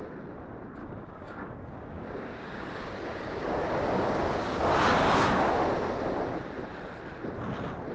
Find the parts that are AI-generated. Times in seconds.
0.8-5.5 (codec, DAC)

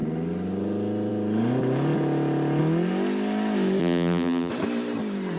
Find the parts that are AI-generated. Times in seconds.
3.8-4.5 (vocoder, BigVGAN v2)

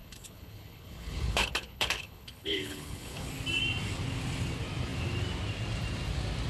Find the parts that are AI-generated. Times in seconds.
0.0-3.3 (codec, HILCodec)

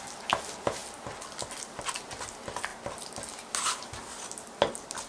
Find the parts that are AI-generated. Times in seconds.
none